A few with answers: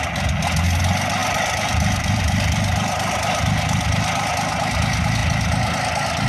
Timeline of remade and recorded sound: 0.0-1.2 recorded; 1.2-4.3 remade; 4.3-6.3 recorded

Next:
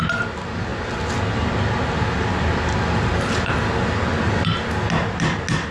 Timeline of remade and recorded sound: 0.0-5.7 recorded

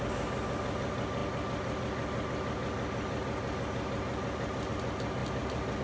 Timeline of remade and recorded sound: 0.0-5.8 recorded